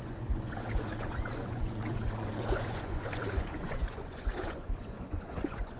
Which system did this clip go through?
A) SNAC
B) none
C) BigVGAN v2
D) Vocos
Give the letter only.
D